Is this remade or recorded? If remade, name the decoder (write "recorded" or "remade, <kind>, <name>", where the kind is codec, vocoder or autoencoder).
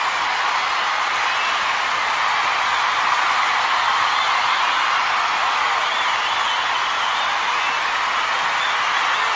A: recorded